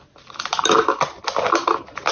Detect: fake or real real